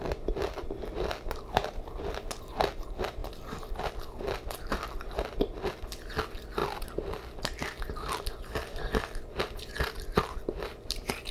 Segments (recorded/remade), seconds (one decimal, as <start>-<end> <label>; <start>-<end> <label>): 0.0-10.7 recorded; 10.7-11.3 remade